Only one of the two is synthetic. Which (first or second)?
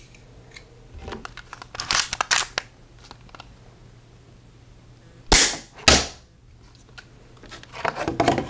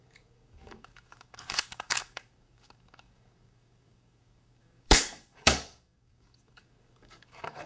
second